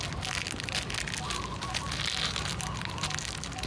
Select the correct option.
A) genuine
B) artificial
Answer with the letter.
A